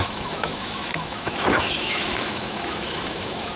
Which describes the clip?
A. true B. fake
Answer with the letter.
B